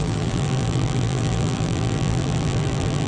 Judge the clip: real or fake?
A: fake